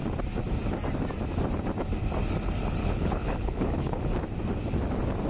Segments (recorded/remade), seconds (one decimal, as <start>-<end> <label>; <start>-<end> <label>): 0.0-2.8 recorded; 2.8-4.0 remade; 4.0-5.3 recorded